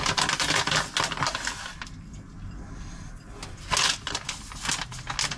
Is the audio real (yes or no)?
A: yes